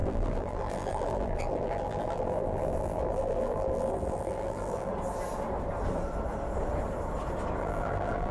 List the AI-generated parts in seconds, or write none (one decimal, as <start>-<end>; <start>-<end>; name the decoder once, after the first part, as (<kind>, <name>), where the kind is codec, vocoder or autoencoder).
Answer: 0.0-4.9 (vocoder, BigVGAN v2); 7.6-8.3